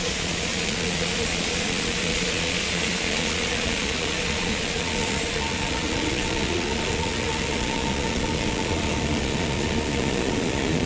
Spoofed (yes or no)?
yes